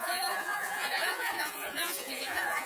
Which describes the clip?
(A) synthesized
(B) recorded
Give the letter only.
A